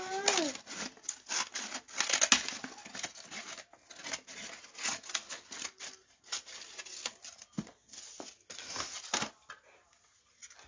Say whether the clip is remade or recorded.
recorded